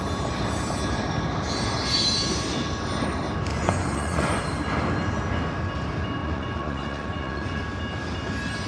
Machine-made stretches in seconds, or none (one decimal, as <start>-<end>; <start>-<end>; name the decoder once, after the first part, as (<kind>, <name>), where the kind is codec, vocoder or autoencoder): 3.5-4.4 (vocoder, Vocos); 6.2-7.6